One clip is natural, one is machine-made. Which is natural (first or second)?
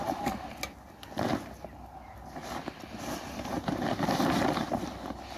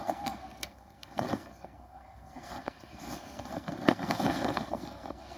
first